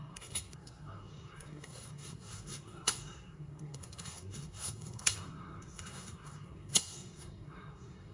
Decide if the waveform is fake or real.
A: fake